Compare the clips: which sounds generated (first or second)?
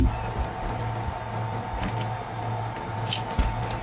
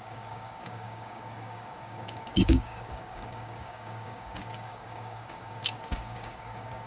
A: second